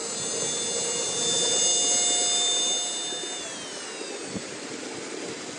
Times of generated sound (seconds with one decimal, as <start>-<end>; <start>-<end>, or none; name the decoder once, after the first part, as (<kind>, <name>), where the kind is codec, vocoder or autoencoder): none